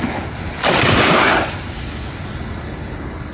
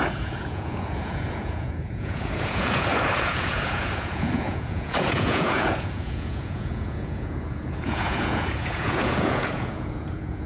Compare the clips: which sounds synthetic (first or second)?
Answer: second